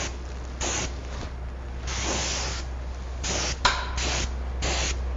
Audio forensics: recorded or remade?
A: recorded